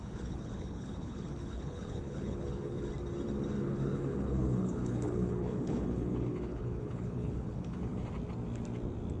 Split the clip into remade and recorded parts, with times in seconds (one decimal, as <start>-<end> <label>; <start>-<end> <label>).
0.0-2.9 remade; 2.9-3.6 recorded; 3.6-7.9 remade; 7.9-9.2 recorded